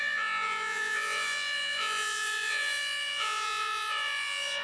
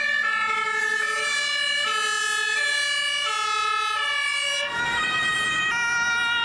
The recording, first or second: second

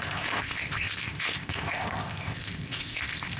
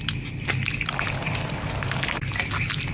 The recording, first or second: second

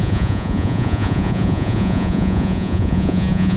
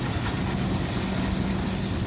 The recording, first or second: second